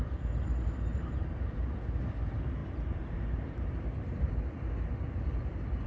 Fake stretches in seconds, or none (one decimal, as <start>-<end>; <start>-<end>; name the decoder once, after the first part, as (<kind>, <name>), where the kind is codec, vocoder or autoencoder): 0.9-1.8 (vocoder, BigVGAN v2); 2.6-4.3